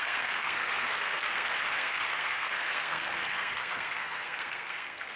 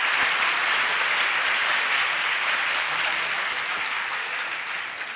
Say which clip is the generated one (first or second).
first